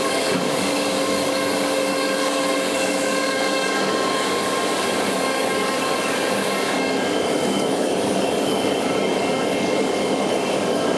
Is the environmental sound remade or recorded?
remade